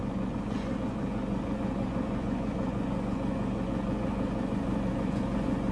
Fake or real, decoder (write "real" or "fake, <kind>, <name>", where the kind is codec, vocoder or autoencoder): fake, vocoder, Vocos